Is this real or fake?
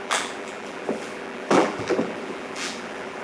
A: fake